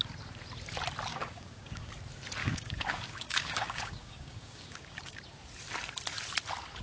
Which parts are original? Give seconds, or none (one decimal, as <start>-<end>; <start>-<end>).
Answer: 0.0-1.1; 1.9-2.4; 5.2-6.8

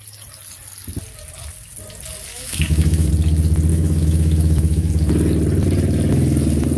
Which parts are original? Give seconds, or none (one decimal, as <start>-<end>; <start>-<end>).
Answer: 0.0-2.3; 3.1-3.7; 4.9-6.8

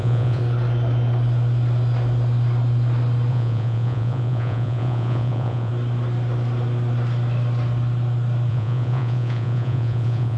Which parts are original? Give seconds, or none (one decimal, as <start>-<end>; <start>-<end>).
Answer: 0.4-3.3; 5.7-8.5